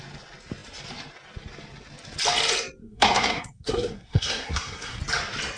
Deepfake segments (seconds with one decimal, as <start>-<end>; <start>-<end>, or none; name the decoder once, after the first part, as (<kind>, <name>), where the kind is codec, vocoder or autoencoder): 2.8-5.0 (codec, SNAC)